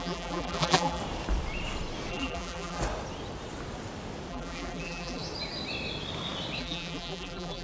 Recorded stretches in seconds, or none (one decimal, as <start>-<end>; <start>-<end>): 1.0-2.1; 2.8-4.3; 5.2-6.6